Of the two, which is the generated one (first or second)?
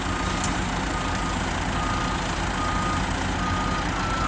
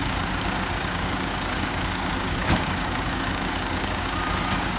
second